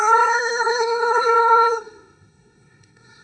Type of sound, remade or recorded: remade